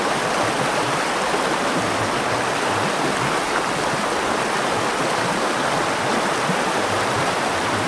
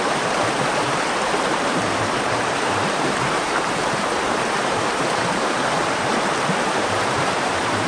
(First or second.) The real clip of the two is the first